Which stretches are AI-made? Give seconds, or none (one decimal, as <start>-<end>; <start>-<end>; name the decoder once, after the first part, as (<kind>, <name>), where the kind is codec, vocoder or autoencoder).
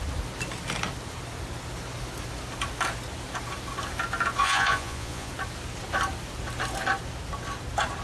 4.4-5.3 (vocoder, Vocos)